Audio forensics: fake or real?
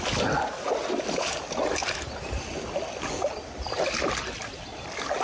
real